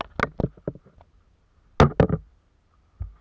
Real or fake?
real